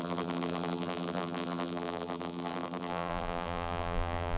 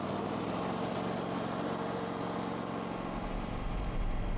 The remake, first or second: first